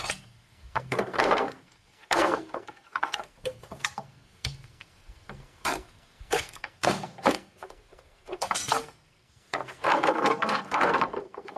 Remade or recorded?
remade